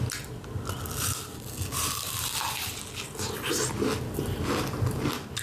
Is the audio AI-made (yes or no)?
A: no